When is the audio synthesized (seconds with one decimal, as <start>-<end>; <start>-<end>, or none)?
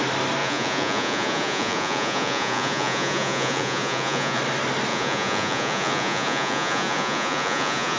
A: 0.4-4.4; 4.9-8.0